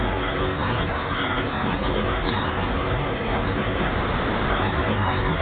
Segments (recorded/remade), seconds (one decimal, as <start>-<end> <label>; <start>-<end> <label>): 0.0-3.9 remade; 3.9-4.5 recorded; 4.5-5.4 remade